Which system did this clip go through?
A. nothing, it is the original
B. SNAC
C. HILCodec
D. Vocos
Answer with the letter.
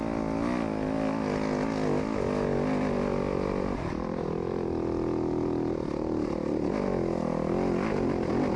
A